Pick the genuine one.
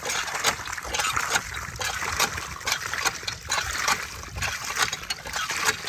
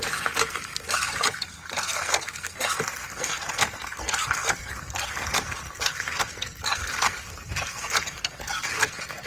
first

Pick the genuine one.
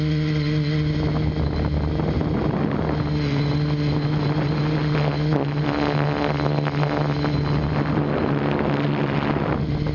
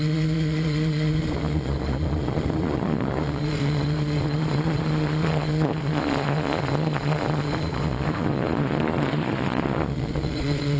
first